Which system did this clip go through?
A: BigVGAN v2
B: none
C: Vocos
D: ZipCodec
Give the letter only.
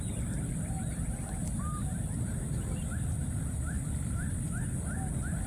B